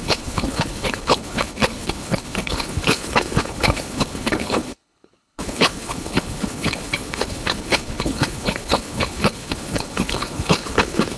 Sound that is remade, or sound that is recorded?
remade